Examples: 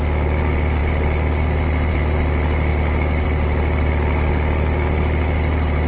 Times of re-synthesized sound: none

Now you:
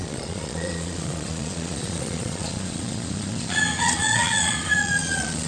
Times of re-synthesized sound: 0.0-5.5

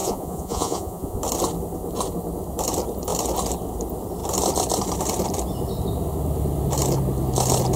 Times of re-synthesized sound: 0.0-1.2

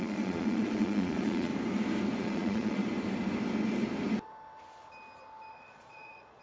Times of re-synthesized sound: 0.0-1.5; 2.2-2.8; 5.5-6.4

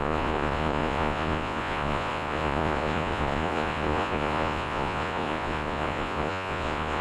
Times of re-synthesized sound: 0.0-7.0

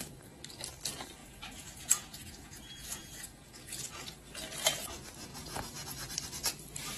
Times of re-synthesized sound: 1.2-4.2; 5.3-5.9